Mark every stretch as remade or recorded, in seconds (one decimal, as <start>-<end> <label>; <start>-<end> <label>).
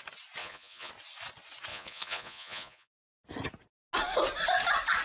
0.0-0.4 recorded; 0.4-0.9 remade; 0.9-1.7 recorded; 1.7-3.2 remade; 3.2-5.0 recorded